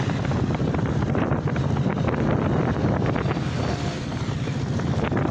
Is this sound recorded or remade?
remade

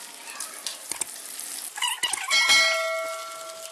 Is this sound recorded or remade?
recorded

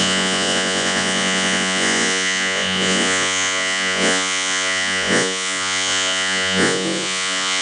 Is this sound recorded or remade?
remade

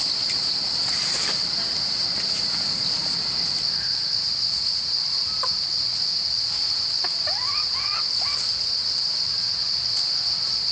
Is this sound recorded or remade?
recorded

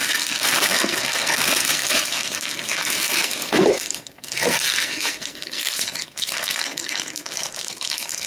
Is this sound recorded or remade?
remade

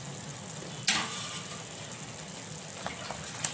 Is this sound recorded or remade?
recorded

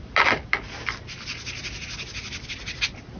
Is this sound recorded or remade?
recorded